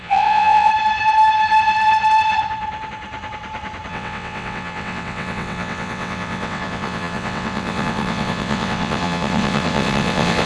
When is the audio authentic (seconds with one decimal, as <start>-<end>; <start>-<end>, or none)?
0.7-3.9